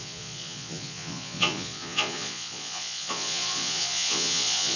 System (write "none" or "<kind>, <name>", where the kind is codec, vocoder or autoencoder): vocoder, Vocos